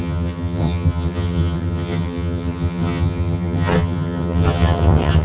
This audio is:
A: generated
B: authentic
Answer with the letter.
A